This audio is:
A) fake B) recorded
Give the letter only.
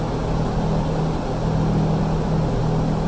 B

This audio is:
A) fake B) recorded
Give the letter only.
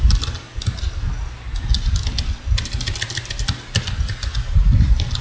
B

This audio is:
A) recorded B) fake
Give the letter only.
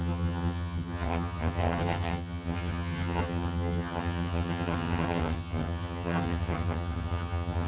B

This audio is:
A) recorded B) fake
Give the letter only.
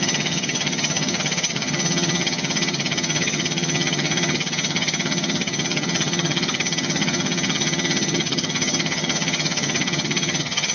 B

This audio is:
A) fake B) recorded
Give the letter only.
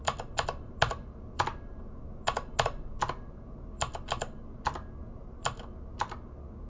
B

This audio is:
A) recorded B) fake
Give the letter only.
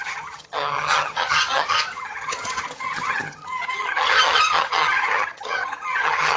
B